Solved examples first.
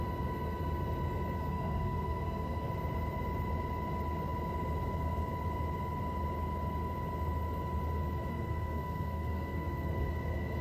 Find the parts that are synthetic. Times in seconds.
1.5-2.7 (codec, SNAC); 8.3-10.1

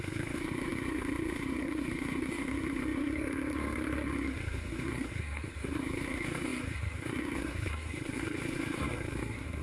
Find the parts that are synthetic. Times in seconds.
0.0-9.6 (codec, SNAC)

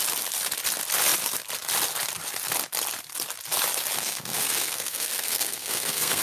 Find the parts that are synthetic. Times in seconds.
4.0-6.2 (codec, SNAC)